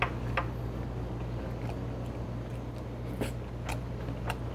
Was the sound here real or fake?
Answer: real